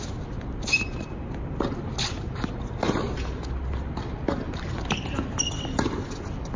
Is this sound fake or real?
real